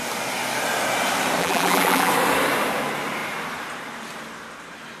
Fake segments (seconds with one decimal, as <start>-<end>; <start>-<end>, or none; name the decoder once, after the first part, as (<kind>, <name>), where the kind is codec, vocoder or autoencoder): 1.4-2.1 (vocoder, BigVGAN v2)